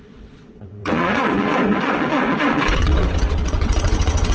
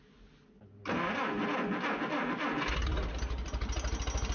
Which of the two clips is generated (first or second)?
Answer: first